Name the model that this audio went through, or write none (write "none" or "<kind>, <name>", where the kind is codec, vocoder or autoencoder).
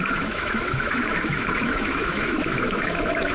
autoencoder, DAC-VAE